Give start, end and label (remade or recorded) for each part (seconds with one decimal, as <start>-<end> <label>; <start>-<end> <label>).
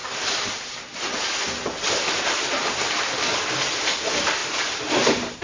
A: 0.0-5.4 recorded